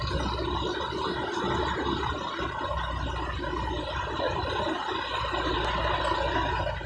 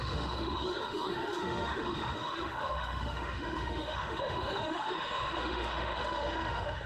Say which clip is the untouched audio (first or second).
first